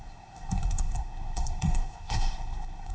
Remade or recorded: remade